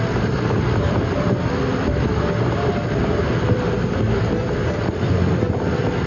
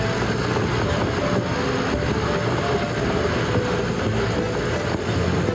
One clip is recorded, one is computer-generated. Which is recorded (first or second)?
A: second